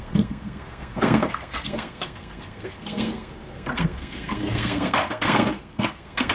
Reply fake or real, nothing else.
fake